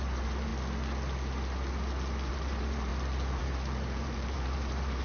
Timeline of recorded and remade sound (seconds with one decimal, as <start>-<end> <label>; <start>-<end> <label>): 0.0-0.5 remade; 0.5-2.3 recorded; 2.3-2.9 remade; 2.9-3.4 recorded; 3.4-5.0 remade